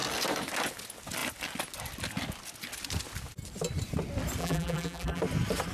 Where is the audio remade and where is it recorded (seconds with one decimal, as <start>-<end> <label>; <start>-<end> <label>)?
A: 0.0-4.4 recorded; 4.4-5.2 remade; 5.2-5.7 recorded